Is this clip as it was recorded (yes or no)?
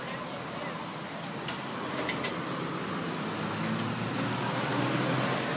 yes